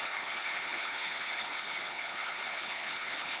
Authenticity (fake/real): fake